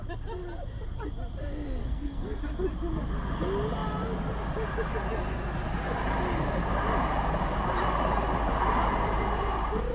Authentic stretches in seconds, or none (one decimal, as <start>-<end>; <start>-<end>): 0.0-1.8; 2.4-9.9